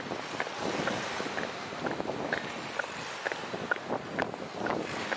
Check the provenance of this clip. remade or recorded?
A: recorded